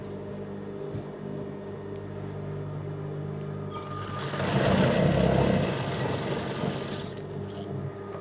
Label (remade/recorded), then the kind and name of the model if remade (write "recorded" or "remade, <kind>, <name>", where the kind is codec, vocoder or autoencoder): recorded